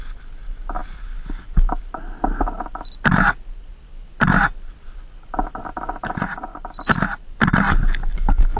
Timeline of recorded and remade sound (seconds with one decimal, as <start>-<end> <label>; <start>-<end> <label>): 0.0-8.6 recorded